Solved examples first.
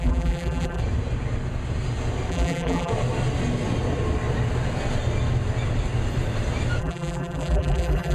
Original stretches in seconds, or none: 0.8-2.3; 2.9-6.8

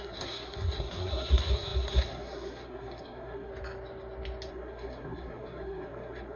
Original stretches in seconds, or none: 3.5-4.5

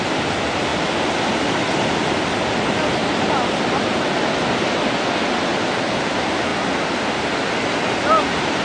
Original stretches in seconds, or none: 0.7-2.6; 3.0-5.6; 6.5-8.6

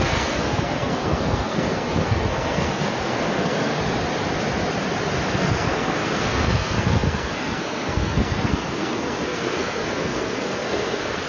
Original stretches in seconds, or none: 3.7-5.3

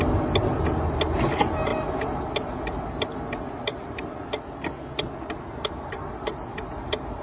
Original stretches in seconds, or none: 0.0-7.2